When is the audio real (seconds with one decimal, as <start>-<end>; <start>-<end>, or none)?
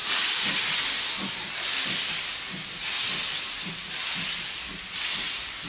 0.0-5.7